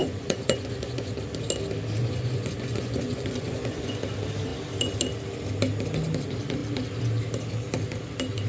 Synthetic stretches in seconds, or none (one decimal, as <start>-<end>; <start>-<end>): 0.0-1.2; 2.0-4.0